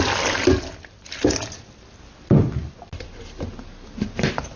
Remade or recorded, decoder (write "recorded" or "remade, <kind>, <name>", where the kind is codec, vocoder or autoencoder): recorded